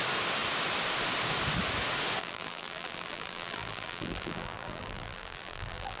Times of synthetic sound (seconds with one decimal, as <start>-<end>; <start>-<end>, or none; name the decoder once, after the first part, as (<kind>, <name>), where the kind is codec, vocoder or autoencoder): 2.2-6.0 (vocoder, BigVGAN v2)